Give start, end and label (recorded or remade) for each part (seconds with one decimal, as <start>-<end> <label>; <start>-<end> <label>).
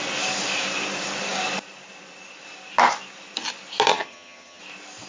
0.0-3.9 recorded; 3.9-4.6 remade; 4.6-5.1 recorded